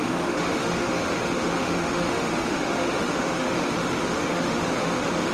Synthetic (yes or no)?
yes